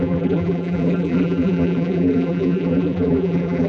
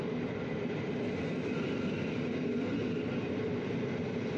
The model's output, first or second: first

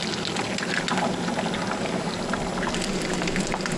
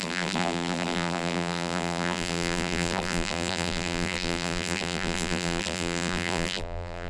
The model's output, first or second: second